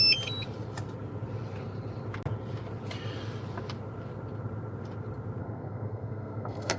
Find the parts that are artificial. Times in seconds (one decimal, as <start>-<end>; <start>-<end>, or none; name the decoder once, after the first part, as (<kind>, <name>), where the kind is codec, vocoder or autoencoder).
5.4-6.8 (codec, SNAC)